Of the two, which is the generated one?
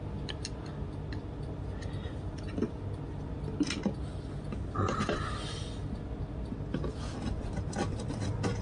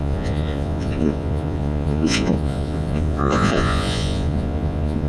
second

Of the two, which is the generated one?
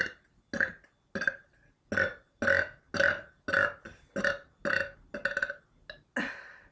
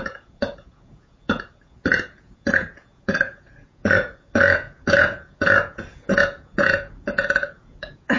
second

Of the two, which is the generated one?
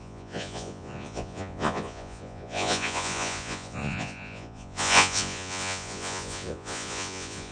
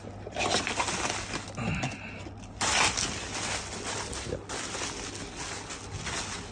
first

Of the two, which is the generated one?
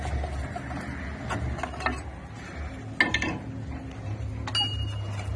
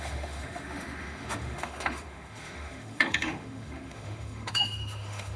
second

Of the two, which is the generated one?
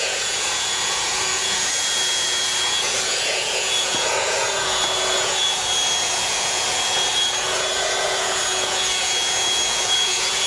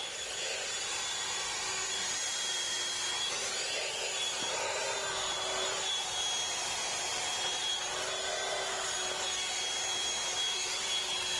first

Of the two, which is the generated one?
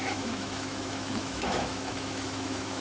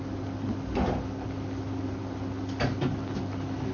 first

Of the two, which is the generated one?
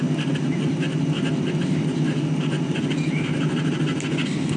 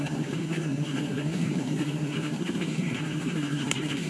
second